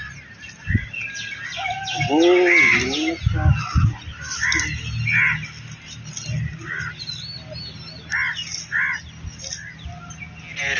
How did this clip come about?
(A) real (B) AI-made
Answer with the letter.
A